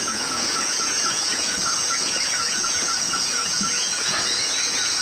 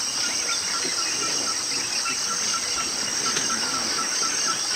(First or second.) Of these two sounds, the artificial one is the first